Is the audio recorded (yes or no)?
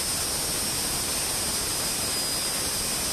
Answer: yes